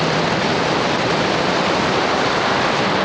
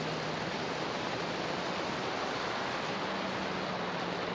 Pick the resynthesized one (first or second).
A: first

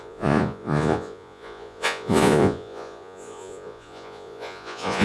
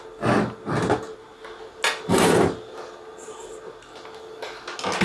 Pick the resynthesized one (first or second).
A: first